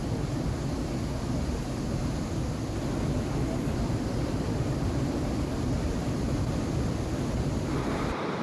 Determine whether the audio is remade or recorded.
recorded